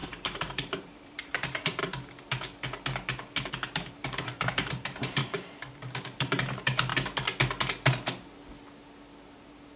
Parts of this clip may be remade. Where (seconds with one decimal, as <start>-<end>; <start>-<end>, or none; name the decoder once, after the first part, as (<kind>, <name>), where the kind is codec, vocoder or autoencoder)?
0.0-1.8 (vocoder, BigVGAN v2); 3.5-5.2; 6.0-6.9; 9.3-9.8